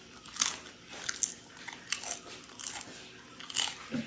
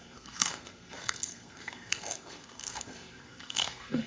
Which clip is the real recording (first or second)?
first